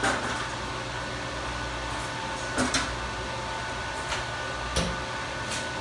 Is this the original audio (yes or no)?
yes